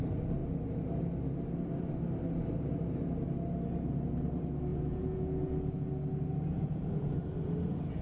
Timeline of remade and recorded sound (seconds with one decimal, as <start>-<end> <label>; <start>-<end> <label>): 0.0-4.7 recorded; 4.7-5.9 remade; 5.9-6.5 recorded; 6.5-7.2 remade; 7.2-8.0 recorded